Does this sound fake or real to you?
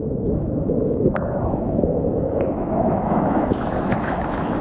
fake